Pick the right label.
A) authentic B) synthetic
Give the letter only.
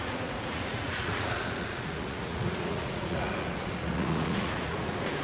B